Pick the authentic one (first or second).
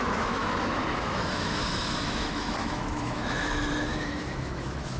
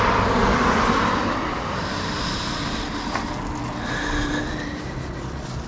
second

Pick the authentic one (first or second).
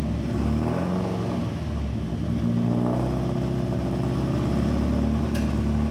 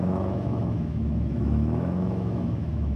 first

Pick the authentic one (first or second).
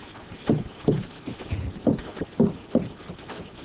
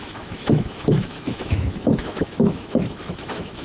first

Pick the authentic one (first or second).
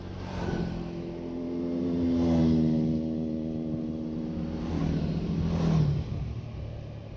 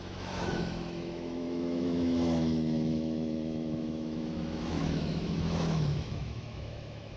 first